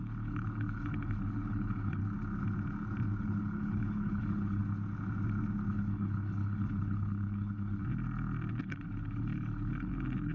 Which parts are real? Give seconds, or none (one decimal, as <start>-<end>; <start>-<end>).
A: 2.0-3.2; 4.6-5.7; 7.9-8.5